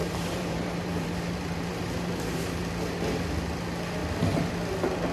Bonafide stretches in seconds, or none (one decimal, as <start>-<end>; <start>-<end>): 2.7-5.1